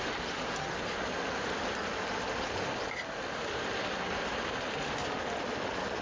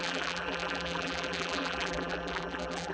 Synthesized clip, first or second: second